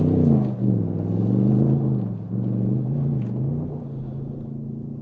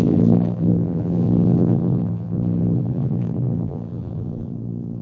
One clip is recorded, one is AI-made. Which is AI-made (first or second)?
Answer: second